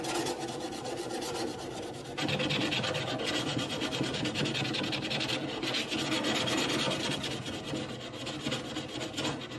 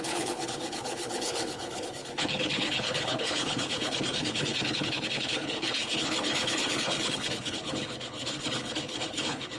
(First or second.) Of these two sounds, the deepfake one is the second